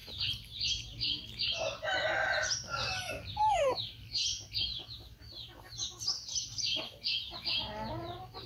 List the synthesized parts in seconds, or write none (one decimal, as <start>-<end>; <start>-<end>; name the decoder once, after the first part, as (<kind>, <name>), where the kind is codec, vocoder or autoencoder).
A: none